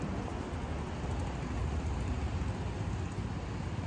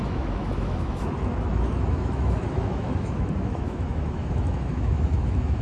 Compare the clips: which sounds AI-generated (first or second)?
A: second